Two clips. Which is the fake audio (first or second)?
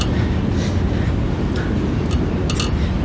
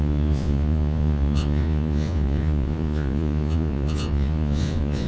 second